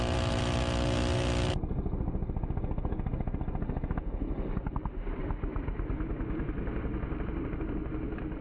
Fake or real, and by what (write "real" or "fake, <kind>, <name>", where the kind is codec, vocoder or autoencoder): real